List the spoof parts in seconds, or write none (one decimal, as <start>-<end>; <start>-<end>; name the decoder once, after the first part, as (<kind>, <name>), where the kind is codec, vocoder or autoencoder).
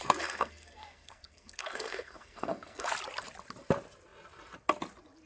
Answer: 0.0-2.9 (codec, SNAC)